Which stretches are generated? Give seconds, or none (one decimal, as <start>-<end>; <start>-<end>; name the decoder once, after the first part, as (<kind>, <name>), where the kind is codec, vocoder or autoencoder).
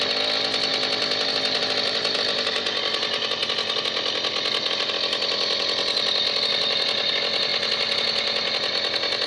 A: 0.7-2.5 (vocoder, BigVGAN v2)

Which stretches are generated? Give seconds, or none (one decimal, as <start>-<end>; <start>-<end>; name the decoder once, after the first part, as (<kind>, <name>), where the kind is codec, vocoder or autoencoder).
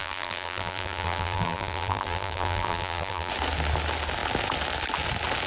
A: 0.0-3.3 (vocoder, BigVGAN v2)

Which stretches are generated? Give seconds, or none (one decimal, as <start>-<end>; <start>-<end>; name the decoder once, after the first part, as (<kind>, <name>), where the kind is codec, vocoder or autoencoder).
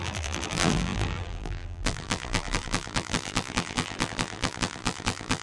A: 0.0-5.4 (vocoder, BigVGAN v2)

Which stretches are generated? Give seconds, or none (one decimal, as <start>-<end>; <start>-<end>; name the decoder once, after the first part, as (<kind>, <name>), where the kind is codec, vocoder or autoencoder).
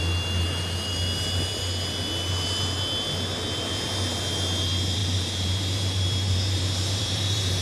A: 5.0-7.6 (vocoder, BigVGAN v2)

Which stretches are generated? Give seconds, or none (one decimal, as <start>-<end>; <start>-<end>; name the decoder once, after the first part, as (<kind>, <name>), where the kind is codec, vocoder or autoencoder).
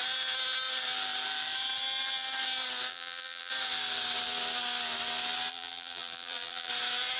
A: 2.9-3.5 (vocoder, BigVGAN v2); 5.5-6.7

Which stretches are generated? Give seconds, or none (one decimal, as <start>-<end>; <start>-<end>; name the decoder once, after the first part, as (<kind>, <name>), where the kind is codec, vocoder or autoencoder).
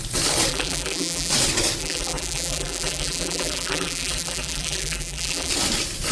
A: 0.5-1.3 (vocoder, BigVGAN v2); 1.8-5.5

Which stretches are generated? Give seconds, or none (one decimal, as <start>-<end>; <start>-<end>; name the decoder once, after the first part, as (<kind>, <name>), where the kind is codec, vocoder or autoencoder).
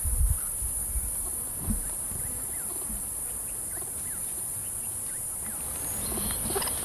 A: 0.8-4.9 (vocoder, BigVGAN v2)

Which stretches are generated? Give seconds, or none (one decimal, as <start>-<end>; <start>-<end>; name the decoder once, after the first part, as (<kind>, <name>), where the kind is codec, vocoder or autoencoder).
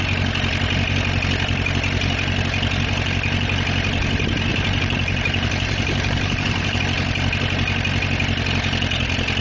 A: 4.5-6.8 (vocoder, BigVGAN v2)